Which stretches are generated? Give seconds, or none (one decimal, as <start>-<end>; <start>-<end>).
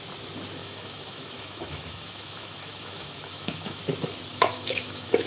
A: 0.6-3.8; 4.3-5.3